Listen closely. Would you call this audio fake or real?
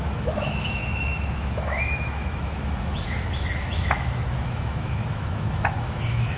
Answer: fake